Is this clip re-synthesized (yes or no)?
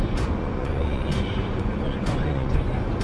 yes